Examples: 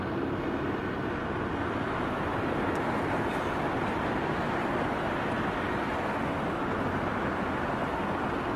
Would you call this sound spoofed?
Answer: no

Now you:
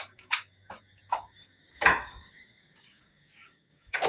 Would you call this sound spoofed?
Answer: yes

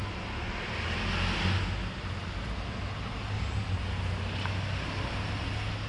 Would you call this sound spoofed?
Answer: no